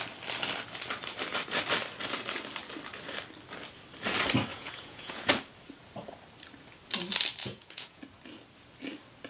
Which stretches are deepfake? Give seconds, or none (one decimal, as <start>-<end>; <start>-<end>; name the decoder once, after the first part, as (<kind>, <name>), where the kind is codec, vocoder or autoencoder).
4.5-5.3 (vocoder, Vocos); 7.4-8.0